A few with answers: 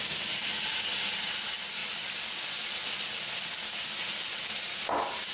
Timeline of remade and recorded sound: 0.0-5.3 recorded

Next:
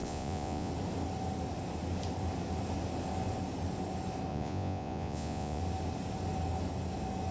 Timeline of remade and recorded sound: 0.0-0.7 remade; 0.7-4.3 recorded; 4.3-5.6 remade; 5.6-7.3 recorded

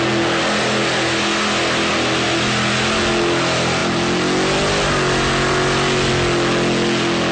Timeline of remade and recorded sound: 0.0-7.3 recorded